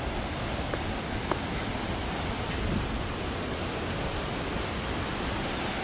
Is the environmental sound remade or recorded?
recorded